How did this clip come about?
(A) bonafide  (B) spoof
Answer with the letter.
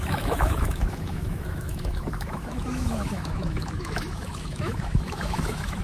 B